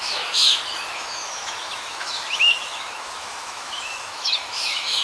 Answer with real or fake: fake